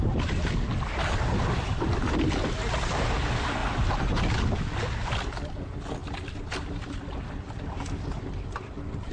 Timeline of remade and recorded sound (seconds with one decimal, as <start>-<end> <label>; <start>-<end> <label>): 0.0-9.1 recorded